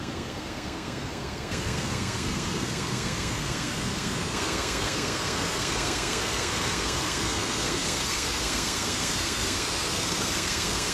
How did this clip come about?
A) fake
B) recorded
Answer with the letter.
A